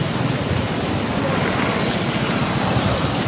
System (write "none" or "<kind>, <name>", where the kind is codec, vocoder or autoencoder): none